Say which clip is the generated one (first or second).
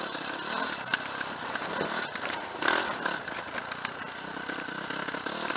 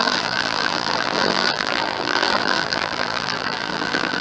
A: second